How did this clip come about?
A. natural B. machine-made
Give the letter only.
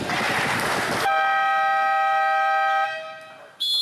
A